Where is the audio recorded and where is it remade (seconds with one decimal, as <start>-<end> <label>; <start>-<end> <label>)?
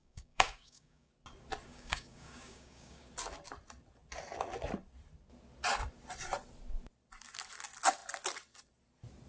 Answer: 0.0-1.1 remade; 1.1-1.7 recorded; 1.7-3.1 remade; 3.1-9.3 recorded